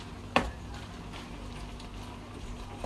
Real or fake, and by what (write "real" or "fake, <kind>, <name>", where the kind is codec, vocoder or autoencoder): real